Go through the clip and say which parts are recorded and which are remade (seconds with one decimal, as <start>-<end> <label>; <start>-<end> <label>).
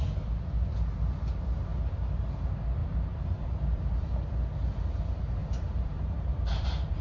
0.0-2.8 recorded; 2.8-3.9 remade; 3.9-5.4 recorded; 5.4-7.0 remade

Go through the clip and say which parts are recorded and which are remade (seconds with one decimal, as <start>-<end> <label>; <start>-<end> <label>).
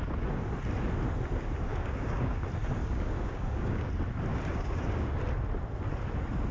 0.0-1.7 recorded; 1.7-2.4 remade; 2.4-2.8 recorded; 2.8-3.9 remade; 3.9-4.3 recorded; 4.3-5.1 remade; 5.1-6.5 recorded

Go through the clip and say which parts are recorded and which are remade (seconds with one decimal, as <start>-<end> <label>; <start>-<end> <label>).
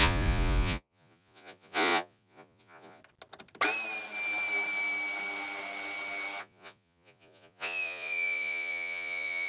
0.0-3.0 remade; 3.0-6.4 recorded; 6.4-9.5 remade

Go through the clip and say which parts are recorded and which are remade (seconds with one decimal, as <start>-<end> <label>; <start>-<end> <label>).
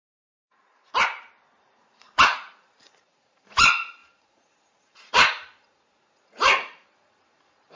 0.0-0.8 remade; 0.8-1.6 recorded; 1.6-7.8 remade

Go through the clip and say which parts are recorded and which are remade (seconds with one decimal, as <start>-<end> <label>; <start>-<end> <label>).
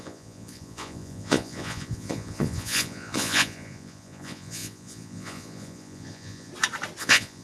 0.0-6.5 remade; 6.5-7.0 recorded; 7.0-7.4 remade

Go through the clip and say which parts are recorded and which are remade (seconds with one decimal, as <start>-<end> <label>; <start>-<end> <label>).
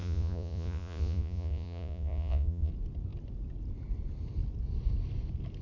0.0-2.7 remade; 2.7-5.6 recorded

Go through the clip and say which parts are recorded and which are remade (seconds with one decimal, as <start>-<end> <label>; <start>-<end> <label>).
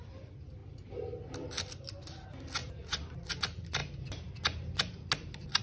0.0-2.6 recorded; 2.6-3.3 remade; 3.3-5.6 recorded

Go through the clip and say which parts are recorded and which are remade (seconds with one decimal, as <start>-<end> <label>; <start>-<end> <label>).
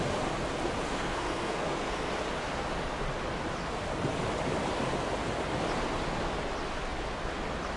0.0-0.9 recorded; 0.9-2.1 remade; 2.1-7.8 recorded